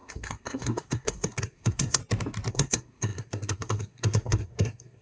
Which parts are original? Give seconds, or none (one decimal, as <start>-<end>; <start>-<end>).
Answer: 2.0-2.5